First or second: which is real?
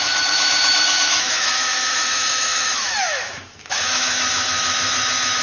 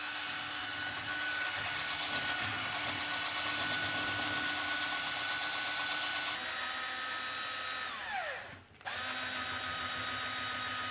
second